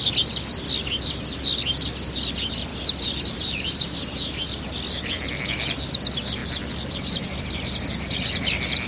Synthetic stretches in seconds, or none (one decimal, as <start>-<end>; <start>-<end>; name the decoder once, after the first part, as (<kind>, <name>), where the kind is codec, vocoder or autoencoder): 2.7-4.5 (vocoder, BigVGAN v2)